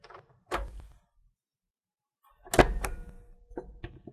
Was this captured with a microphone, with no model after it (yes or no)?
yes